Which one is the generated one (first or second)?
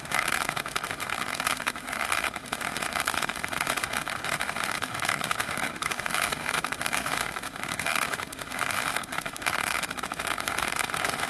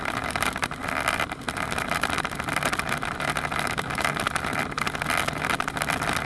first